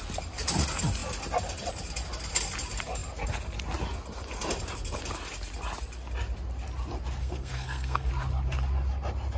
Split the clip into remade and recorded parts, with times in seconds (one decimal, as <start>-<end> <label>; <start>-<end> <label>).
0.0-7.2 recorded; 7.2-8.1 remade; 8.1-9.4 recorded

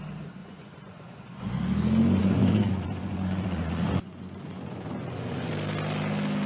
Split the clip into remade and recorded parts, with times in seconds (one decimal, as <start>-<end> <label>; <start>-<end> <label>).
0.0-0.4 recorded; 0.4-1.5 remade; 1.5-2.2 recorded; 2.2-5.5 remade; 5.5-6.5 recorded

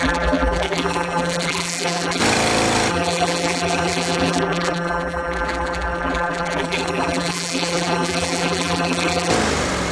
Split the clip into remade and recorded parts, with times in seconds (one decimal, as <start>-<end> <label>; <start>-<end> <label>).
0.0-2.2 remade; 2.2-2.9 recorded; 2.9-9.3 remade; 9.3-9.9 recorded